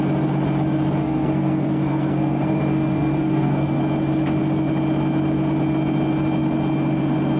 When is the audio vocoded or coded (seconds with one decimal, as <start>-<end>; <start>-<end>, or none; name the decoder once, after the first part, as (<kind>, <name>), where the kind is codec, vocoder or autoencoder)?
1.0-3.8 (codec, SNAC)